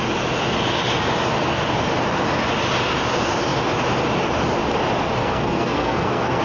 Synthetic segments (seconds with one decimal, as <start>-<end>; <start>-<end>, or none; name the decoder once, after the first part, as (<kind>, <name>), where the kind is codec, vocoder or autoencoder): 5.2-6.4 (codec, SNAC)